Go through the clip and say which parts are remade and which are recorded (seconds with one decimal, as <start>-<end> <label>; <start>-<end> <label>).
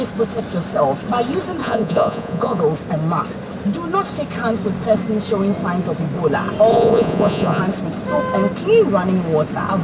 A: 0.0-1.6 recorded; 1.6-2.6 remade; 2.6-6.7 recorded; 6.7-7.6 remade; 7.6-9.8 recorded